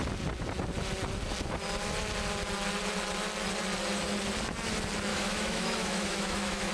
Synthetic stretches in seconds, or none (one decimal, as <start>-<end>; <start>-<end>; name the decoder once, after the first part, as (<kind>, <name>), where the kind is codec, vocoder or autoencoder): 5.1-6.7 (autoencoder, DAC-VAE)